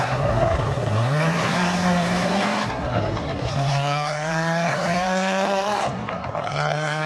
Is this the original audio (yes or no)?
no